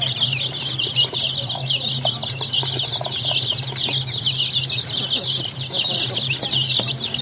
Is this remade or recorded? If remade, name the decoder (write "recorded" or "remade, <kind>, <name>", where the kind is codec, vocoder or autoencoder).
recorded